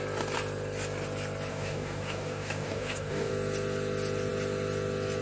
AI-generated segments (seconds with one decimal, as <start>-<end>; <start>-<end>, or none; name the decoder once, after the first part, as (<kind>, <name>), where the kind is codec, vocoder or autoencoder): 1.5-3.3 (codec, DAC)